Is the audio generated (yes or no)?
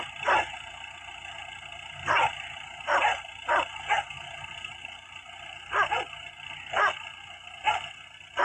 no